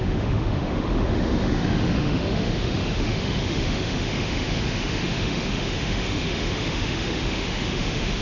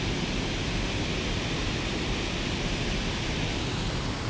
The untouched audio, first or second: second